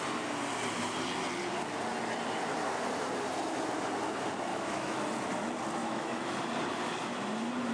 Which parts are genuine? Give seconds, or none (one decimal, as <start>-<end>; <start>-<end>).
0.0-4.5; 5.0-5.8; 6.4-7.7